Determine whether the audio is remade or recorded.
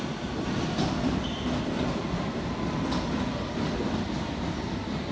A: recorded